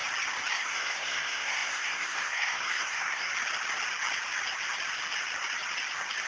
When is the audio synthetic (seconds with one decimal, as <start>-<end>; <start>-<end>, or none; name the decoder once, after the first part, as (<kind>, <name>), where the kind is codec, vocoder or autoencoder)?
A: 0.5-3.3 (codec, SNAC)